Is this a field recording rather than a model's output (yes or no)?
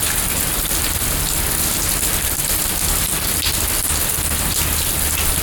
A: yes